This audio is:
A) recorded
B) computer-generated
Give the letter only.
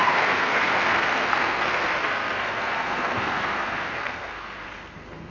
B